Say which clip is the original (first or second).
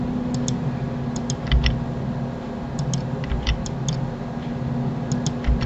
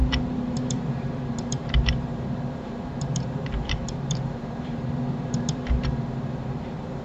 first